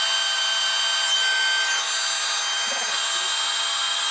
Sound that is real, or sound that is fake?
real